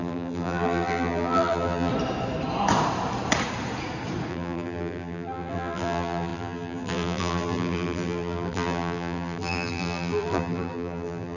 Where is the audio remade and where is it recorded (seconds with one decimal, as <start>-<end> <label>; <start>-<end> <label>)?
0.0-1.9 remade; 1.9-4.3 recorded; 4.3-11.4 remade

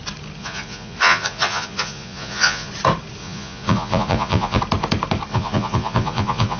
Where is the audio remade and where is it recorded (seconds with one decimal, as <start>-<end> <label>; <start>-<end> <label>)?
0.0-0.4 recorded; 0.4-2.7 remade; 2.7-3.2 recorded; 3.2-4.6 remade; 4.6-5.3 recorded; 5.3-6.6 remade

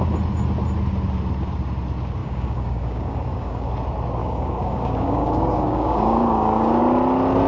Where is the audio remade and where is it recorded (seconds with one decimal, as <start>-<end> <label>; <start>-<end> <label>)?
0.0-2.2 recorded; 2.2-3.7 remade; 3.7-4.2 recorded; 4.2-6.8 remade; 6.8-7.5 recorded

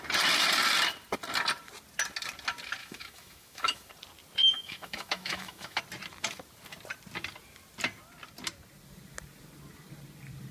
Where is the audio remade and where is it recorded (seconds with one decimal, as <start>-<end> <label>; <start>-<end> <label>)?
0.0-2.8 recorded; 2.8-3.9 remade; 3.9-4.4 recorded; 4.4-5.8 remade; 5.8-10.5 recorded

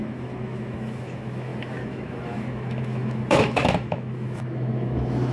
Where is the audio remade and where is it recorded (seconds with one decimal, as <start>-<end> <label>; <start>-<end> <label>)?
0.0-5.3 remade

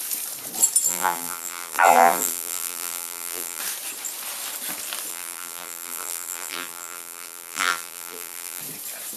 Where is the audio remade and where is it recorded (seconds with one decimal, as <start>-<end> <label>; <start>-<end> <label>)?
0.0-0.9 recorded; 0.9-3.6 remade; 3.6-5.1 recorded; 5.1-8.6 remade; 8.6-9.2 recorded

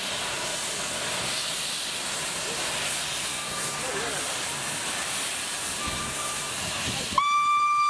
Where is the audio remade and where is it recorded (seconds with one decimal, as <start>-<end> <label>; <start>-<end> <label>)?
0.0-3.3 recorded; 3.3-3.8 remade; 3.8-5.8 recorded; 5.8-6.5 remade; 6.5-7.9 recorded